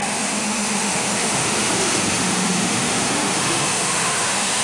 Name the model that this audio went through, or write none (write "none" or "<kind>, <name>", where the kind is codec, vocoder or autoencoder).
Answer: autoencoder, DAC-VAE